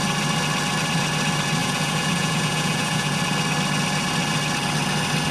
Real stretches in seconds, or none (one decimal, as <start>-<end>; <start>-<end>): 0.0-1.6; 3.2-5.3